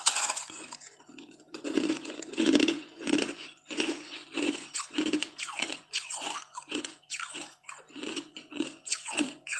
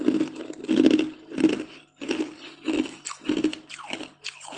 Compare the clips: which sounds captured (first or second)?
second